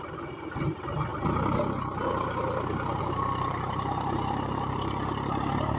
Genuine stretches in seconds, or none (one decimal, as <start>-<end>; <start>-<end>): 1.1-3.0